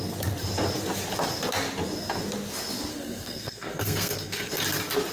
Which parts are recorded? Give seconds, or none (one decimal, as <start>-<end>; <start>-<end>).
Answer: 0.0-2.9; 4.5-5.1